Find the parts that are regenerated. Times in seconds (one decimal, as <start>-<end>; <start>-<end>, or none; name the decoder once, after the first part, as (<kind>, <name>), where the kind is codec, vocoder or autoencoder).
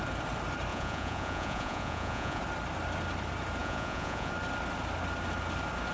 0.7-2.4 (vocoder, Vocos); 3.6-4.3